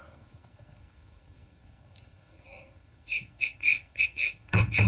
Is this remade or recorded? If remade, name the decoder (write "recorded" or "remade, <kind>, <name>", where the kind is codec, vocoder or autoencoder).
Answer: remade, codec, SNAC